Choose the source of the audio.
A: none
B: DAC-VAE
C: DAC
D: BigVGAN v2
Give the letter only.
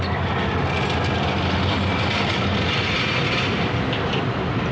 A